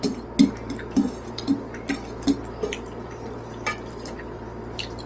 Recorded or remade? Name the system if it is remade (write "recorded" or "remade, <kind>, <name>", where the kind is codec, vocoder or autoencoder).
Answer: recorded